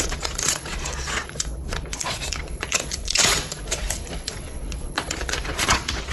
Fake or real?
fake